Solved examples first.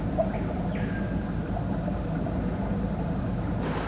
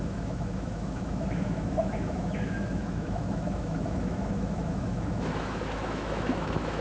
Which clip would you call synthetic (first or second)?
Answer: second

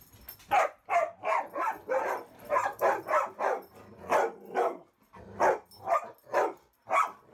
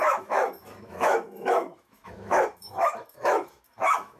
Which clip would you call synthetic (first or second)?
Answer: second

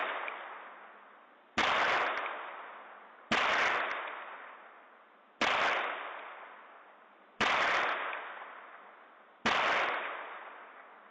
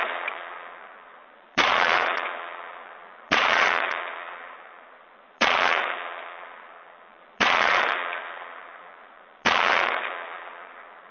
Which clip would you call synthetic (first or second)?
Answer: second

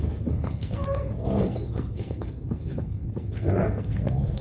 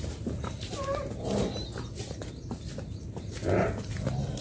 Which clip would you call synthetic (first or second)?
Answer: first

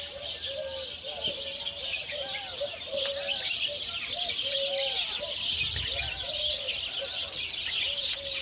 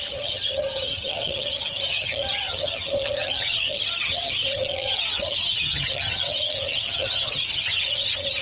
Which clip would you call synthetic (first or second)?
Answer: second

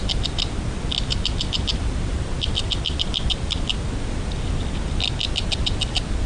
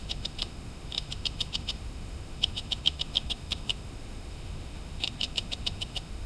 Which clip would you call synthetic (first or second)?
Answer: second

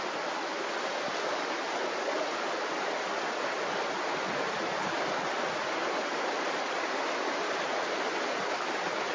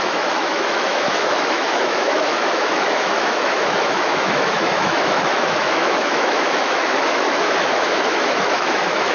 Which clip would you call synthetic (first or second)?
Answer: second